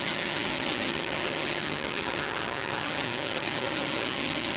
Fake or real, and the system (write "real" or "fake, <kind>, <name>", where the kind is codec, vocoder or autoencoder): fake, vocoder, HiFi-GAN